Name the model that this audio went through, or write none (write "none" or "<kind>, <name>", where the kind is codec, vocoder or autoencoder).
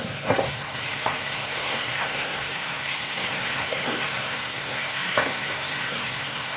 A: codec, SNAC